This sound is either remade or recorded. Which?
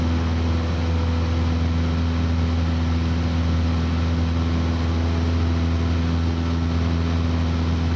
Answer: recorded